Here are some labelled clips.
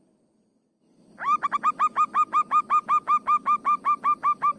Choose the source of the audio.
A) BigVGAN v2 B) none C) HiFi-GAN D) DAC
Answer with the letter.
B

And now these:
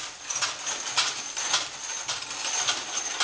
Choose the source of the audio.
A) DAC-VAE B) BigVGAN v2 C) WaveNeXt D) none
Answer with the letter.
D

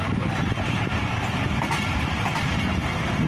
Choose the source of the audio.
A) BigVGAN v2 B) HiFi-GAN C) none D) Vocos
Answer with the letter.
A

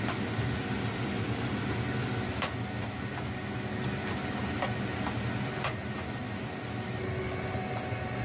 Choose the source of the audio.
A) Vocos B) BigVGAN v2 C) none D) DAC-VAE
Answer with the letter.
C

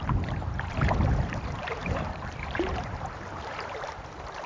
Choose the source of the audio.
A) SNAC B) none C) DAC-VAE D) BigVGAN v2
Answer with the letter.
D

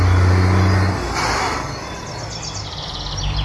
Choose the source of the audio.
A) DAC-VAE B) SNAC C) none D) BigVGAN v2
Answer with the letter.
C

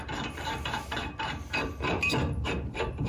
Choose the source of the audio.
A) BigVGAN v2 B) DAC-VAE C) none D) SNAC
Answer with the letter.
A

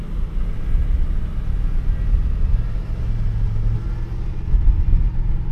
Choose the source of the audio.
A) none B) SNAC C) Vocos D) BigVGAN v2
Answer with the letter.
A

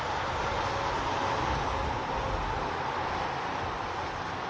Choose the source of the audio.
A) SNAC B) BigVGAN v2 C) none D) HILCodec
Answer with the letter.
C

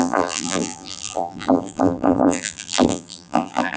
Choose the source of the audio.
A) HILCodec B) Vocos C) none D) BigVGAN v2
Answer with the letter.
D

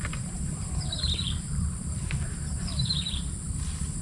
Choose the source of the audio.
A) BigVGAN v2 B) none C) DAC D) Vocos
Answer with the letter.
A